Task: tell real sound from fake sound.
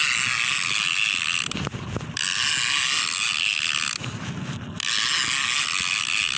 real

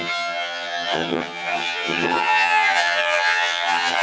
fake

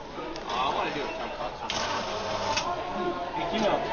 real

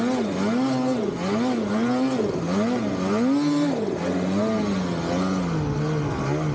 real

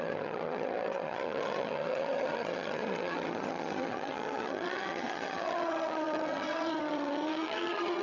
fake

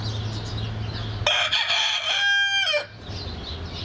real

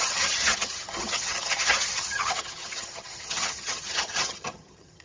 fake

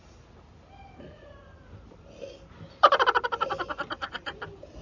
real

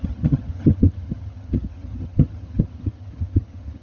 fake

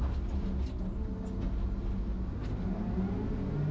real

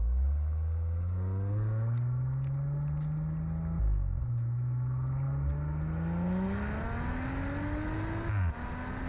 real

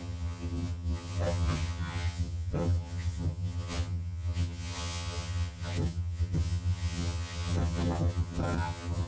fake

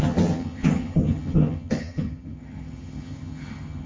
fake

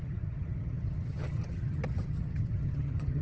fake